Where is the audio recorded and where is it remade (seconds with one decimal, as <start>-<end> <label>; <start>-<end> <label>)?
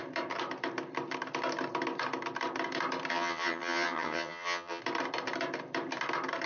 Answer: 0.0-3.1 recorded; 3.1-4.8 remade; 4.8-6.5 recorded